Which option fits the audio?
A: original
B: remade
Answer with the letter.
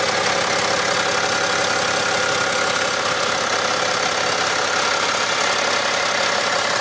A